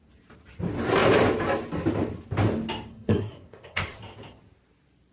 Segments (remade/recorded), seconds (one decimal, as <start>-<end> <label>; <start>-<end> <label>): 0.0-2.9 recorded; 2.9-4.0 remade; 4.0-5.1 recorded